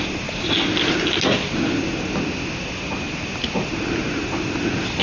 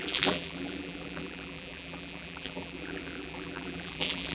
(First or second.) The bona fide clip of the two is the first